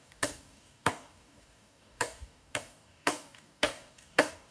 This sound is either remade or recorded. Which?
remade